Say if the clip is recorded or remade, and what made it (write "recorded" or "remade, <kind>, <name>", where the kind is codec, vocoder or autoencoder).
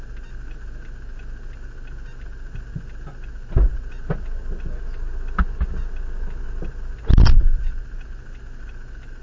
recorded